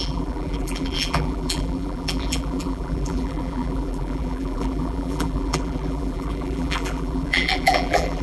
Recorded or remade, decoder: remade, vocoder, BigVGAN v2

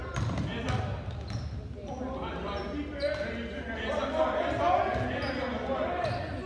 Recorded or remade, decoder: recorded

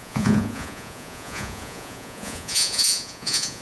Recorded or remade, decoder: remade, vocoder, Vocos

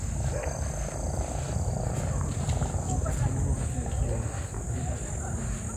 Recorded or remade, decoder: recorded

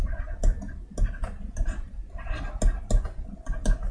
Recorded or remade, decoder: recorded